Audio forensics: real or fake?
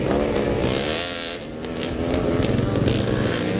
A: real